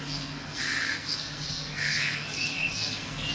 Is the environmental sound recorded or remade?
remade